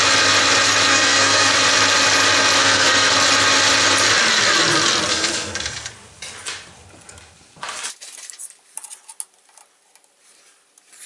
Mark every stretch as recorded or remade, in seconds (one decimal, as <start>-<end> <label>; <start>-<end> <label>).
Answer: 0.0-0.9 recorded; 0.9-1.5 remade; 1.5-2.6 recorded; 2.6-3.1 remade; 3.1-5.1 recorded; 5.1-5.9 remade; 5.9-11.1 recorded